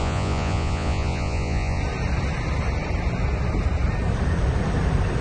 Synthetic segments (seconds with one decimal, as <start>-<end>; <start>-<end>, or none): 0.0-1.8